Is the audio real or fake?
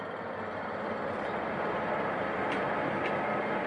real